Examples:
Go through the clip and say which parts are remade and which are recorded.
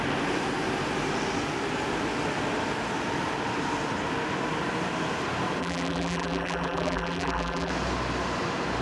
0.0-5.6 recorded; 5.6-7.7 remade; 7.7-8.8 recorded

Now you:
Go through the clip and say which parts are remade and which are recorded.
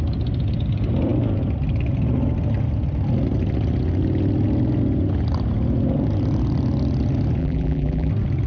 0.0-7.4 recorded; 7.4-8.1 remade; 8.1-8.5 recorded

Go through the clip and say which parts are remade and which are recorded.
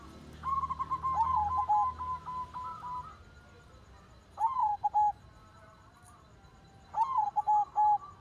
0.0-8.2 recorded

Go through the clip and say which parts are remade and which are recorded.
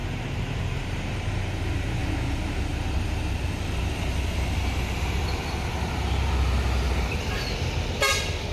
0.0-1.4 remade; 1.4-8.5 recorded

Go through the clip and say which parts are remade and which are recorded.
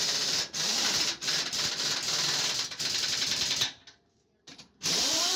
0.0-3.0 recorded; 3.0-5.4 remade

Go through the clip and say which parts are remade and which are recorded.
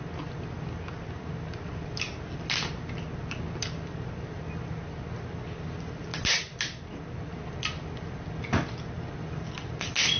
0.0-10.2 recorded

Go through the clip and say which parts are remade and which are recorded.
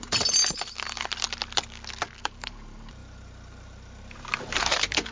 0.0-0.4 remade; 0.4-2.2 recorded; 2.2-5.1 remade